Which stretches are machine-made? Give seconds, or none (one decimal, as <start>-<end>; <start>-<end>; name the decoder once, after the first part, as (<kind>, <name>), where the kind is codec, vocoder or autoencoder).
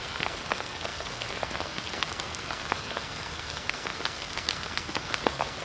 0.0-5.6 (codec, SNAC)